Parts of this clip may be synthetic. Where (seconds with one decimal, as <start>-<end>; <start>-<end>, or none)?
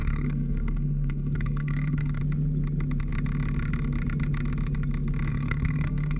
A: 0.0-2.2; 5.3-6.2